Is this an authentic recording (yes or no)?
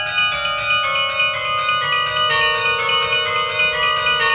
yes